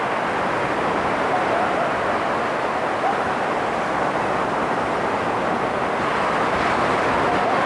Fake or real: real